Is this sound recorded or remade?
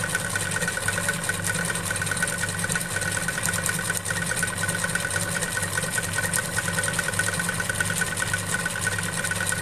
recorded